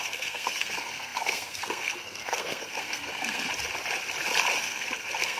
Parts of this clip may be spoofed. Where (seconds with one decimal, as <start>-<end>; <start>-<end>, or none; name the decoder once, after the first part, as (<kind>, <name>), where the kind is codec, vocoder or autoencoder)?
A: 0.0-3.5 (codec, SNAC); 4.6-5.4